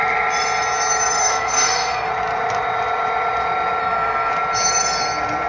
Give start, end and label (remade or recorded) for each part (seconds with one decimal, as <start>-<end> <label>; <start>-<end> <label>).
0.0-1.2 recorded; 1.2-2.1 remade; 2.1-3.8 recorded; 3.8-4.3 remade; 4.3-5.5 recorded